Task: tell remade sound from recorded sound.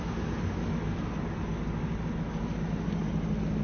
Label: recorded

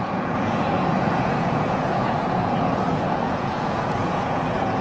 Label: remade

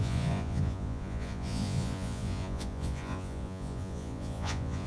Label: remade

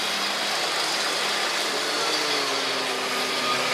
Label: recorded